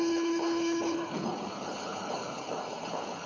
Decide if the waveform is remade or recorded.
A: remade